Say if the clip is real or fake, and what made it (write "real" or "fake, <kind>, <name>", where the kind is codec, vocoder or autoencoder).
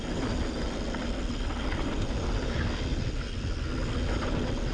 real